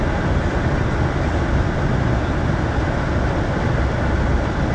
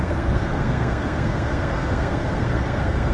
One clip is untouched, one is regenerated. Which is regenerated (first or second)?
second